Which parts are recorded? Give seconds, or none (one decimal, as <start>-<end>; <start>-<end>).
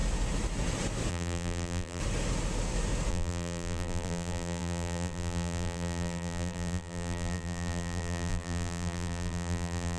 0.0-1.1; 2.0-3.1